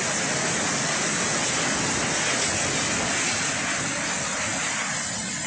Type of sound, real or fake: real